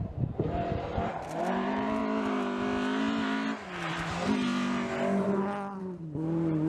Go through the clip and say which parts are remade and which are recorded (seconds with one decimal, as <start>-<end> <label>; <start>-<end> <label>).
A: 0.0-0.9 remade; 0.9-1.4 recorded; 1.4-2.0 remade; 2.0-5.8 recorded; 5.8-6.7 remade